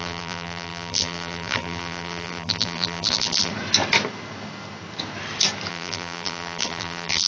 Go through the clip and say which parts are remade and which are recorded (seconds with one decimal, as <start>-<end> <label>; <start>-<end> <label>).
0.0-3.5 remade; 3.5-5.7 recorded; 5.7-7.3 remade